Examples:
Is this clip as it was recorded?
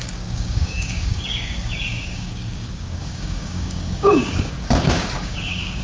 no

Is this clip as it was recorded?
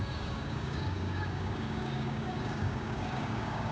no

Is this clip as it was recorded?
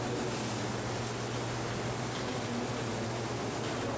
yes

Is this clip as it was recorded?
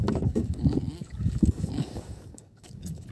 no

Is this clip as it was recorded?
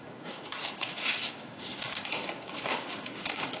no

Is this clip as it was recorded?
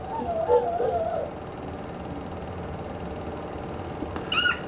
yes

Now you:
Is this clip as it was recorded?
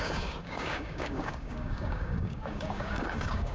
no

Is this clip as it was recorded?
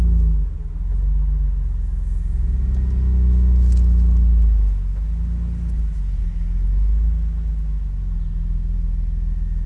yes